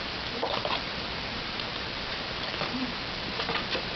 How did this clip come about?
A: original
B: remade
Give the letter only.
B